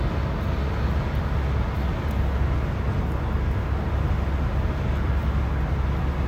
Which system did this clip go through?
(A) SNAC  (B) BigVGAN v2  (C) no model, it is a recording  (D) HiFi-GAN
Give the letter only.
C